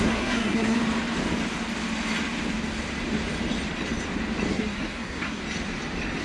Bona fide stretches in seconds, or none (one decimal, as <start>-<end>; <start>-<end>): 0.8-4.5; 5.4-6.2